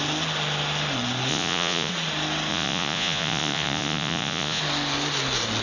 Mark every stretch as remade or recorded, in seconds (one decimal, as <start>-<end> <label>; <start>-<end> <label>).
0.0-1.3 recorded; 1.3-1.9 remade; 1.9-2.5 recorded; 2.5-4.6 remade; 4.6-5.6 recorded